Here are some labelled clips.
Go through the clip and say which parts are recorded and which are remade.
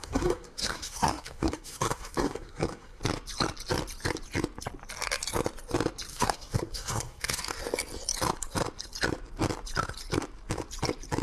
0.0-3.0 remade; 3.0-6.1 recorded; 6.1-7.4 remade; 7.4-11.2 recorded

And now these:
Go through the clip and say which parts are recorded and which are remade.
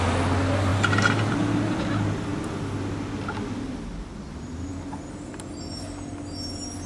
0.0-6.9 recorded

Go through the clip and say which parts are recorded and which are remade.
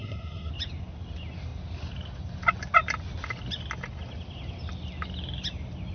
0.0-0.5 remade; 0.5-5.9 recorded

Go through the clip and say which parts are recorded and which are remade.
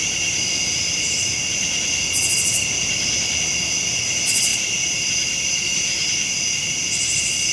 0.0-7.5 recorded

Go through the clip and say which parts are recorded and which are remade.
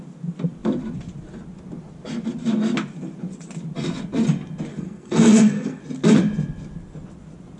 0.0-4.7 recorded; 4.7-5.8 remade; 5.8-7.6 recorded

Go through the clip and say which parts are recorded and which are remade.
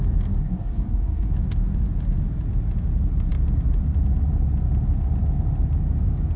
0.0-0.4 recorded; 0.4-1.3 remade; 1.3-6.4 recorded